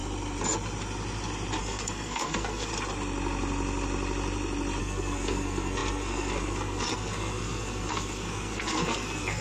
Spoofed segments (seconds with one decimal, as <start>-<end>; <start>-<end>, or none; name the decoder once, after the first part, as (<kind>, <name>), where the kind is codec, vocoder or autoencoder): 1.6-2.7 (codec, SNAC); 4.8-9.4